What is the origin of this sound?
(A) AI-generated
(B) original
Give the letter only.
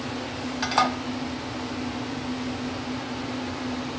B